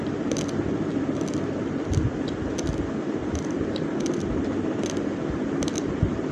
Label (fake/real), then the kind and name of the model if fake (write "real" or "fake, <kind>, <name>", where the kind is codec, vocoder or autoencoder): real